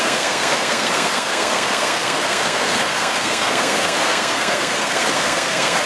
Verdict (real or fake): fake